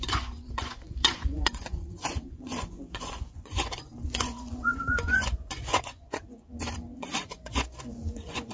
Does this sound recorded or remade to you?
remade